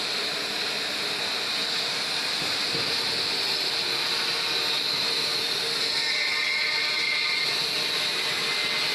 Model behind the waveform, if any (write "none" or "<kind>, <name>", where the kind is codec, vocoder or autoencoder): none